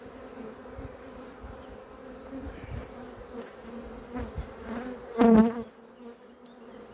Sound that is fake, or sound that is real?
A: real